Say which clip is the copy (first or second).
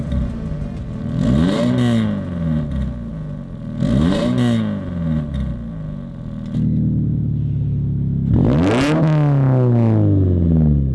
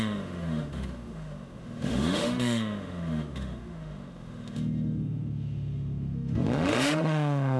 second